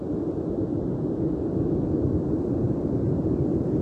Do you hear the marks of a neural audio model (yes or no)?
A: no